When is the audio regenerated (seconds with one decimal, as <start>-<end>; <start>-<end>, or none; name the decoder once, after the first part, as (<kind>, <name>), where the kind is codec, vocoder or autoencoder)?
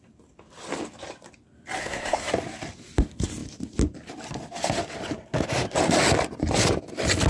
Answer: 1.8-2.3 (codec, SNAC)